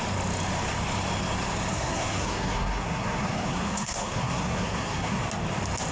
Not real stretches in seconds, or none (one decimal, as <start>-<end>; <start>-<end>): 1.7-5.2